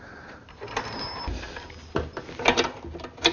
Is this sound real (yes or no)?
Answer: yes